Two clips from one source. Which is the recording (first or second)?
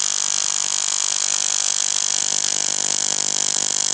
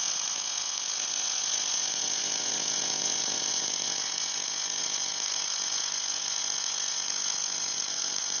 first